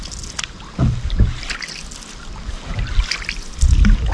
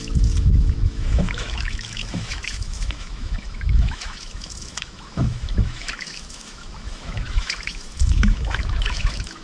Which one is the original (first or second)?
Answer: first